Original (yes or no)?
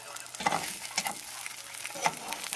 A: yes